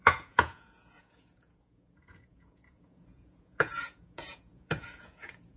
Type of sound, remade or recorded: remade